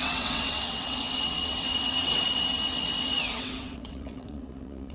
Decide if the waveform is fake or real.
fake